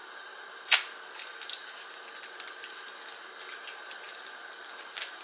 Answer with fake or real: real